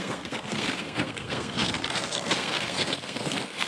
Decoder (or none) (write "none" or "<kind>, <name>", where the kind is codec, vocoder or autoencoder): codec, SNAC